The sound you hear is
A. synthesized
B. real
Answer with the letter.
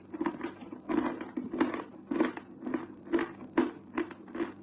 B